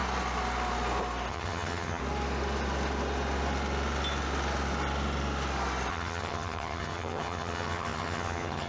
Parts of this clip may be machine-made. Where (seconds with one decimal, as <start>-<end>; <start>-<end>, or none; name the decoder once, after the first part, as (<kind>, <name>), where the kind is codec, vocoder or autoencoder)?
1.3-2.0 (vocoder, HiFi-GAN); 5.9-8.7